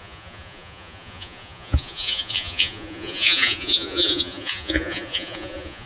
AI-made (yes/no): yes